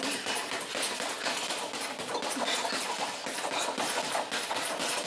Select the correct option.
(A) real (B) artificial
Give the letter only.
A